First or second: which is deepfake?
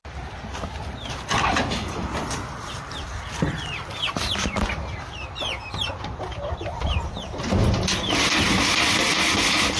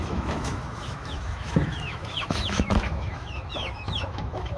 second